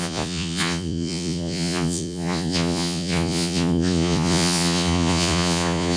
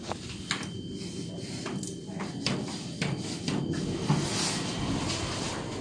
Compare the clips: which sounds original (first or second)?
second